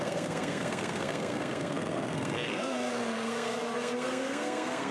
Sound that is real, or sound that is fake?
fake